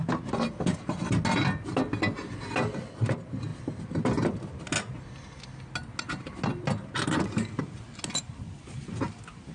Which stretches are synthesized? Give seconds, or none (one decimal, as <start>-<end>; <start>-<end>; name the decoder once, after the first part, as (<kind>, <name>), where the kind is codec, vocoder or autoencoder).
none

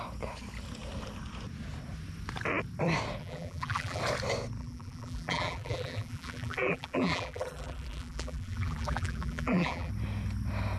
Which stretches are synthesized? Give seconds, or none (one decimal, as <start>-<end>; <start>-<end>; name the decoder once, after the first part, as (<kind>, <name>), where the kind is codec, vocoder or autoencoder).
3.2-4.0 (vocoder, BigVGAN v2); 4.6-9.9